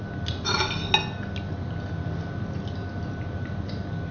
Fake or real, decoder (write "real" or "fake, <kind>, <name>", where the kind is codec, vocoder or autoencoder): real